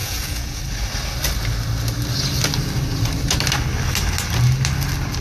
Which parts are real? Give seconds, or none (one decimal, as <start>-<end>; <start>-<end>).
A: 0.6-5.2